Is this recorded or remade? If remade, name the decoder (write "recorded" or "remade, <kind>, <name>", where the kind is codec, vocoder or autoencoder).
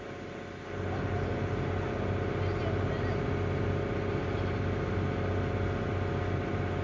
recorded